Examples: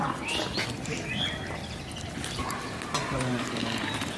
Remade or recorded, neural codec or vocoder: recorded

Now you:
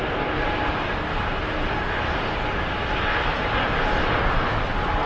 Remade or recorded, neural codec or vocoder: recorded